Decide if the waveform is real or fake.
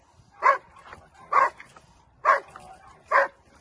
real